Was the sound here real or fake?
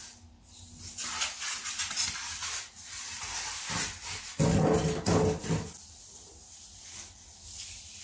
real